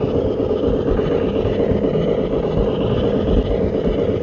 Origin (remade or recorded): recorded